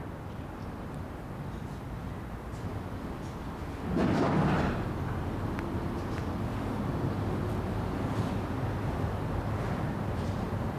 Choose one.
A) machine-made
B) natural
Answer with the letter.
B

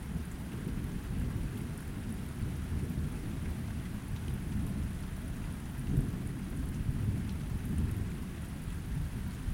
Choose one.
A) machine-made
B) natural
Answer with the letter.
B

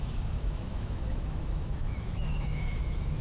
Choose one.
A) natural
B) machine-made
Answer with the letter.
B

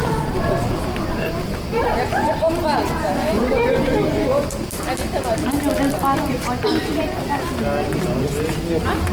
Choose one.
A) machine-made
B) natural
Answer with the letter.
B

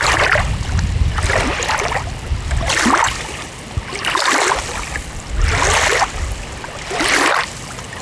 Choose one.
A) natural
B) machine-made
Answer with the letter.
A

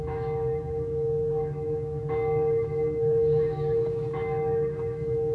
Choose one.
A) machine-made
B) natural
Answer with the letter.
A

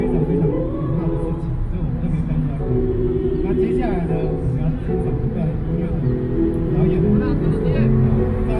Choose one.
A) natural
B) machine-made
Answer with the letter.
A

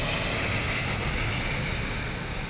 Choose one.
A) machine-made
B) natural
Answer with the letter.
B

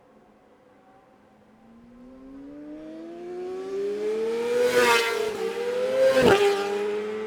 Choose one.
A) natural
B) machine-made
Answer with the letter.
A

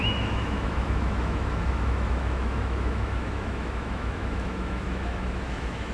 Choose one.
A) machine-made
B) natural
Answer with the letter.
A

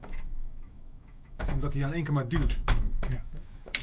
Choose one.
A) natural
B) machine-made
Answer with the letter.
B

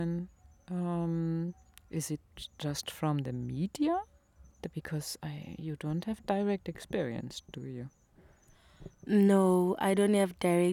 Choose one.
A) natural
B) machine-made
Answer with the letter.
A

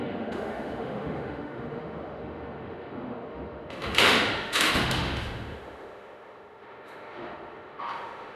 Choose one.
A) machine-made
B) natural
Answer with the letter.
A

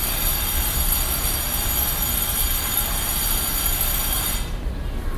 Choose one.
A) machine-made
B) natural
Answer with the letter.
B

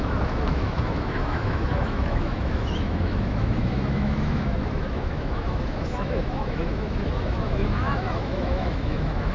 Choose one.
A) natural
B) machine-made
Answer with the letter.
B